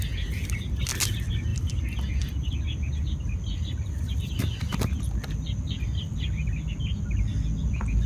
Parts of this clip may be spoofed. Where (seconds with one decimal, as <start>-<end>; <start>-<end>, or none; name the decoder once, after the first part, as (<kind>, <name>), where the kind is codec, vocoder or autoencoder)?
none